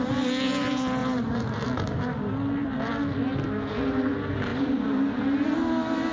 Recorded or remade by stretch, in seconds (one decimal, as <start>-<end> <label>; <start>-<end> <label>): 0.0-1.0 recorded; 1.0-2.0 remade; 2.0-2.6 recorded; 2.6-3.2 remade; 3.2-4.5 recorded; 4.5-5.2 remade; 5.2-6.1 recorded